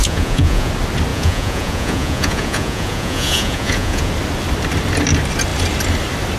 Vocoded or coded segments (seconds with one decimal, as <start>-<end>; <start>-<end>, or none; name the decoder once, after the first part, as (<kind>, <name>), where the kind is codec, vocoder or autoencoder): 0.0-0.7 (vocoder, Vocos); 1.1-4.1